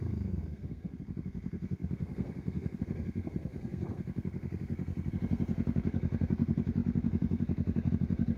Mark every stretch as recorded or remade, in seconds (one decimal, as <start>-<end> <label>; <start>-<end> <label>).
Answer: 0.0-8.4 remade